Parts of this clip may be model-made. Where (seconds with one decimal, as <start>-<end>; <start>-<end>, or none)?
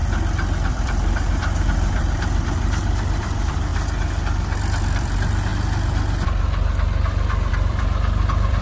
0.7-3.7; 4.8-5.5; 7.5-8.6